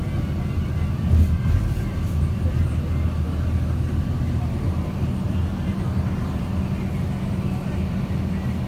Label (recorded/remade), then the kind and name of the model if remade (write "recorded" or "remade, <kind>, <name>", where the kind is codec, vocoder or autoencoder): recorded